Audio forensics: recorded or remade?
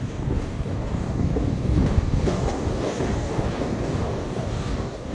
remade